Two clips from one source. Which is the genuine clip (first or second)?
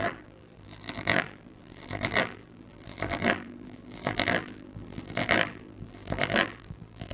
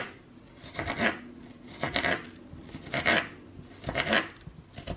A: second